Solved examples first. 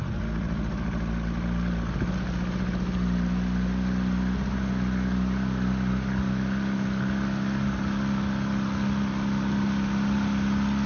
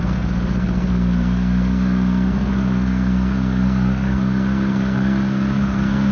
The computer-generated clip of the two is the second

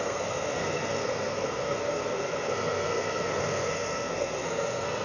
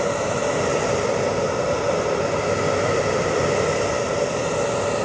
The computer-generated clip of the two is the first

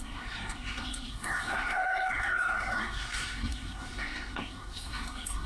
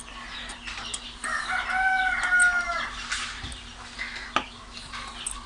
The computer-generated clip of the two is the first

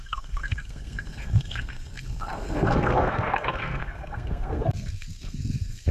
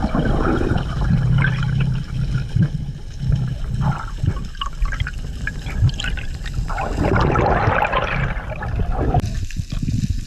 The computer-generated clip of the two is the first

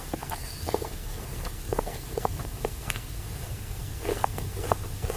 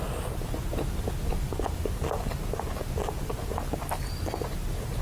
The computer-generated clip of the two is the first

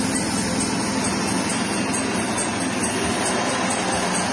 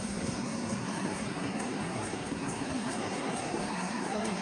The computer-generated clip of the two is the second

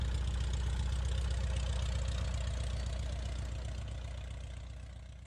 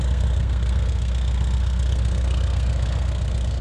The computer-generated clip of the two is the second